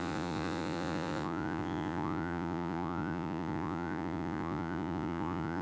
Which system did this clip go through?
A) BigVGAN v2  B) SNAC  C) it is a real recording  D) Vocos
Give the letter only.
D